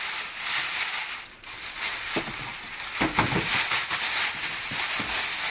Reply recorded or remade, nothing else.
recorded